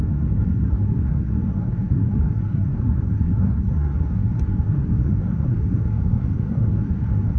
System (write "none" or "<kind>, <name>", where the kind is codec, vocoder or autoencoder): codec, SNAC